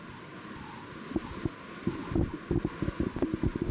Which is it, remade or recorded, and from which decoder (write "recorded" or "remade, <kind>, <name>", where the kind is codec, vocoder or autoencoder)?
recorded